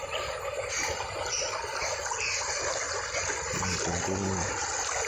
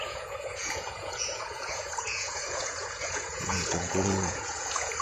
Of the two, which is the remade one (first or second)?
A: second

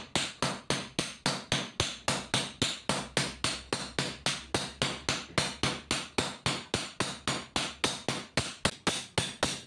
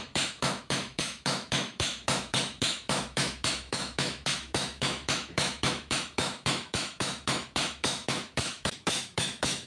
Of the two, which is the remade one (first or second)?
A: second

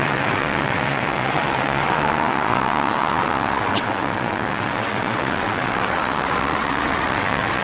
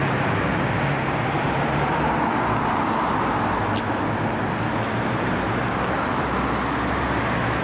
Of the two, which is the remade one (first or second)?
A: first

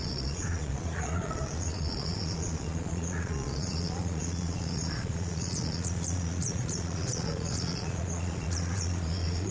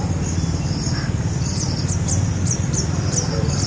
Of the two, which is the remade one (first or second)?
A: first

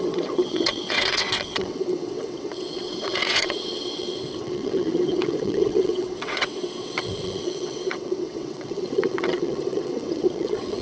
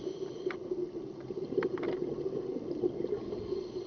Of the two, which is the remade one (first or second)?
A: first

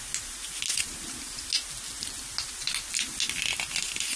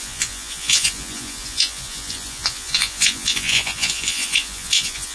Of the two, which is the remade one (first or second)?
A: second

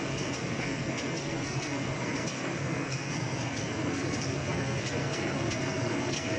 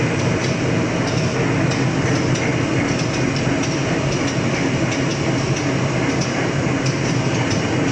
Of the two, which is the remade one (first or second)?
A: first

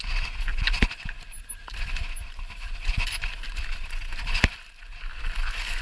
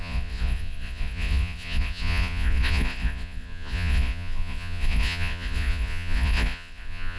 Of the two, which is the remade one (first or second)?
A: second